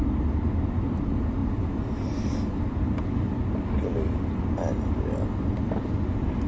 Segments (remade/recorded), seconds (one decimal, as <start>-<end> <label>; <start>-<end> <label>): 0.0-6.5 recorded